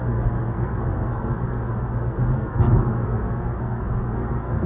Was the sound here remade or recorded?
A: remade